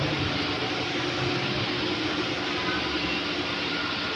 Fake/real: real